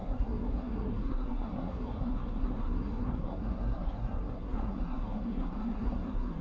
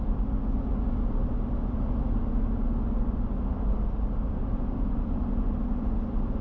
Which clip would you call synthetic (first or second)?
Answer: first